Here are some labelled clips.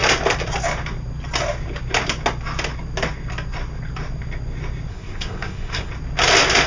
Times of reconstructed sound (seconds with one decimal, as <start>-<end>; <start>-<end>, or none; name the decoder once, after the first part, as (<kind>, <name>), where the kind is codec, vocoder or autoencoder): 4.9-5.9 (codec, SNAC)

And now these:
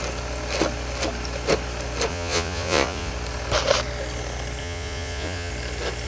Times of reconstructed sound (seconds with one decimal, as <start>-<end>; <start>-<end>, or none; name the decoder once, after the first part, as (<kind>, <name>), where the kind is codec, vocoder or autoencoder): 2.1-3.1 (vocoder, Vocos); 4.6-5.5

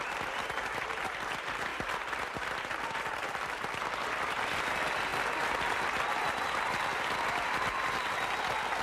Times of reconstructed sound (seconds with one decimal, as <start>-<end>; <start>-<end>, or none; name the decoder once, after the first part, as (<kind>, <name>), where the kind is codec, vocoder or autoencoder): none

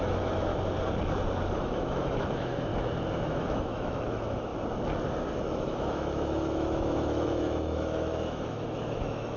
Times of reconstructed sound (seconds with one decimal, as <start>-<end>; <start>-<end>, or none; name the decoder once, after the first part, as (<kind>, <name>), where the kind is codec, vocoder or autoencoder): 0.0-0.5 (autoencoder, DAC-VAE); 1.5-2.7; 3.2-4.5; 5.4-9.4